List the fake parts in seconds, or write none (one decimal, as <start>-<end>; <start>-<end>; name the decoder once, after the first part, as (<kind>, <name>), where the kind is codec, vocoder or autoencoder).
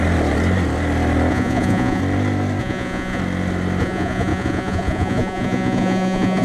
1.3-2.0 (vocoder, Vocos); 2.6-3.2; 3.8-6.4